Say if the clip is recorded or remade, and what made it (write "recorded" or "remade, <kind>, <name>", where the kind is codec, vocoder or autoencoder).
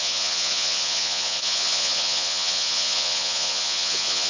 remade, vocoder, Vocos